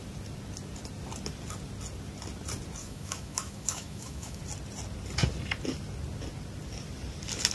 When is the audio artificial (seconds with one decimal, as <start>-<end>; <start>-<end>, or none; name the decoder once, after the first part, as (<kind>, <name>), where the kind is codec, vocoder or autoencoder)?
2.8-4.4 (autoencoder, DAC-VAE)

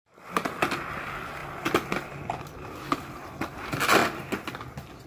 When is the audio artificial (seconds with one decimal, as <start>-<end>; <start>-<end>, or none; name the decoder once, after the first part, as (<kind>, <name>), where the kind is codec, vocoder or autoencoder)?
none

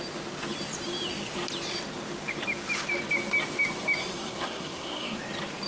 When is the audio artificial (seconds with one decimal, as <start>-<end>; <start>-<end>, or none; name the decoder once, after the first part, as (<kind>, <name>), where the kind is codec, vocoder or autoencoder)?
4.0-5.2 (codec, SNAC)

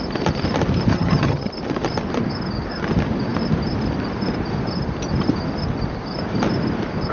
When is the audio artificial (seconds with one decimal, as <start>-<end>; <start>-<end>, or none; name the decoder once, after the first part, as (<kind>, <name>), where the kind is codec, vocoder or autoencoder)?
0.9-1.5 (vocoder, HiFi-GAN)

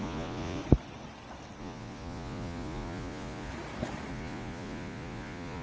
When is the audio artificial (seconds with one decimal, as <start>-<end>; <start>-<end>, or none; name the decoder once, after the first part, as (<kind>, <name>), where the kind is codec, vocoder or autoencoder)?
0.0-0.6 (vocoder, Vocos); 1.6-3.5; 4.1-5.6